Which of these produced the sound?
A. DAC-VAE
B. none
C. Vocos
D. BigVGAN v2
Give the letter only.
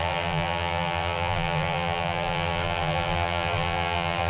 D